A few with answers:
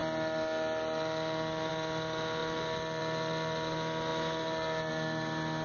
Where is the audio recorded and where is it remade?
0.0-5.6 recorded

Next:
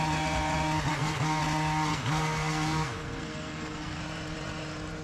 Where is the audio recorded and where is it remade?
0.0-0.9 recorded; 0.9-1.4 remade; 1.4-1.9 recorded; 1.9-4.0 remade; 4.0-5.0 recorded

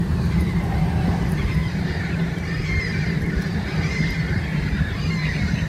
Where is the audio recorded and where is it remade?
0.0-5.7 remade

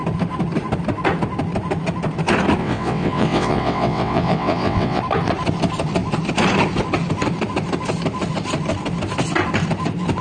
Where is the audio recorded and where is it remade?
0.0-2.6 recorded; 2.6-5.0 remade; 5.0-10.2 recorded